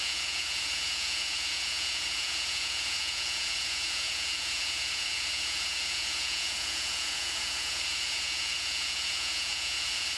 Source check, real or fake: fake